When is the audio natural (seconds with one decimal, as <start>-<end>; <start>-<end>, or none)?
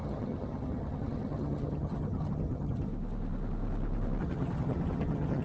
2.9-4.2